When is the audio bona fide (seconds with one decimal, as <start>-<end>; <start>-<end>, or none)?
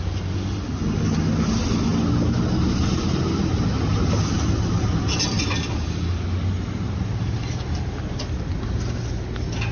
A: 0.0-9.7